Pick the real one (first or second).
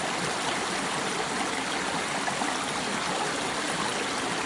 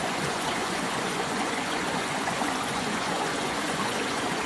first